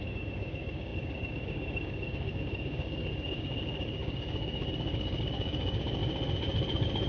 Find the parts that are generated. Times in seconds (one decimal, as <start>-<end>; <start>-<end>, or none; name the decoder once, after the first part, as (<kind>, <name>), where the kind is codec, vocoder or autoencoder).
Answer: 0.0-6.0 (codec, DAC)